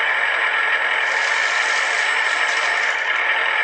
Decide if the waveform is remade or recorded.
recorded